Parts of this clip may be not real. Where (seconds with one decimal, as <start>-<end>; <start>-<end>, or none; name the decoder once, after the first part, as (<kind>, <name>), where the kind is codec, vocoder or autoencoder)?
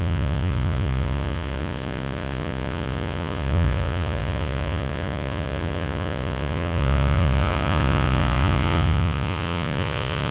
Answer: 0.0-10.3 (vocoder, Vocos)